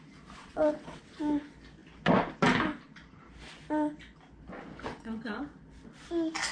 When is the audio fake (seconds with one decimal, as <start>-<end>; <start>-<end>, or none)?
0.4-1.2; 4.9-5.4